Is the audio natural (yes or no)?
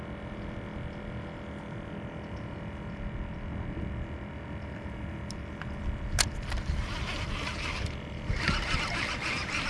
yes